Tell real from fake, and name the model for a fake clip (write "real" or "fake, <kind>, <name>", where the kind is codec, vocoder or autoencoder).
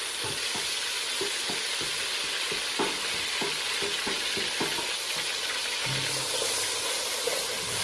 real